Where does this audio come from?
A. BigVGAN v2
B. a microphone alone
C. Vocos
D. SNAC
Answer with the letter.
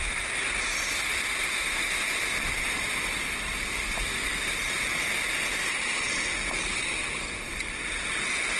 B